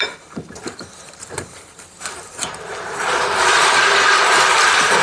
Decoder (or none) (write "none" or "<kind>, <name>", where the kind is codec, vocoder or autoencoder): vocoder, BigVGAN v2